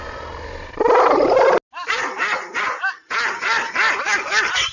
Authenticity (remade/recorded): recorded